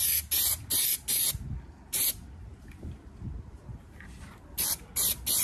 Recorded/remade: recorded